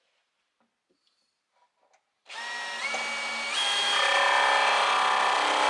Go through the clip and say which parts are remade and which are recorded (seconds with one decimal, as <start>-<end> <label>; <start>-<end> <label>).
0.0-5.7 recorded